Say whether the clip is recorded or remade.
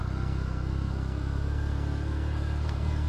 remade